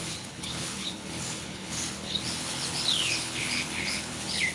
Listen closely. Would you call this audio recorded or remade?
remade